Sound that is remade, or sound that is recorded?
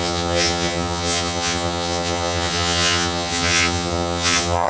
remade